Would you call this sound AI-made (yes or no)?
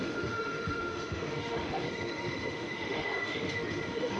yes